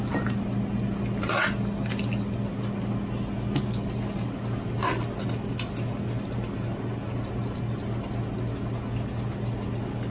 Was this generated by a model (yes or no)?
no